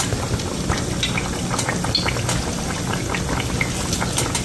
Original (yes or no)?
yes